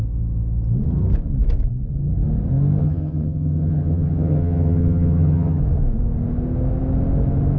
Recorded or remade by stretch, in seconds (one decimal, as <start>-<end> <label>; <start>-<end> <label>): 0.0-2.8 recorded; 2.8-5.6 remade; 5.6-7.6 recorded